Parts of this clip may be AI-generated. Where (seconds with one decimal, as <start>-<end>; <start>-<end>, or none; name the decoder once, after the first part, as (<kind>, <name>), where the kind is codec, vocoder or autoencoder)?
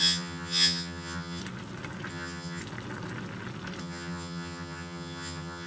0.0-1.4 (vocoder, HiFi-GAN); 2.1-2.6; 3.8-5.7